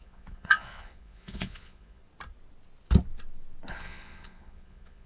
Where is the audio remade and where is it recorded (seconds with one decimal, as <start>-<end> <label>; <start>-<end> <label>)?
0.0-2.0 remade; 2.0-3.7 recorded; 3.7-5.1 remade